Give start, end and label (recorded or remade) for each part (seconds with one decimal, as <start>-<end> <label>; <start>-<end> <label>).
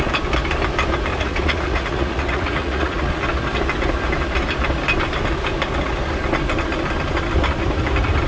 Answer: 0.0-1.1 recorded; 1.1-3.1 remade; 3.1-8.3 recorded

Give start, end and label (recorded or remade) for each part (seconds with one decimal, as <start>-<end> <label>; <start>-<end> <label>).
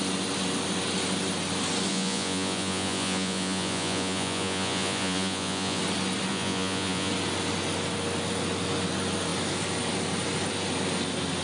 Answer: 0.0-1.9 recorded; 1.9-5.8 remade; 5.8-6.3 recorded; 6.3-7.1 remade; 7.1-11.4 recorded